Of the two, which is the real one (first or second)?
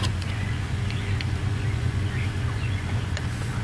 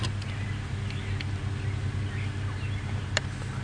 second